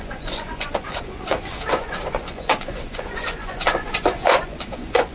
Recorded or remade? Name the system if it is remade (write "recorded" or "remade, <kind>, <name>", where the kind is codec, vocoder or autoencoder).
remade, vocoder, Vocos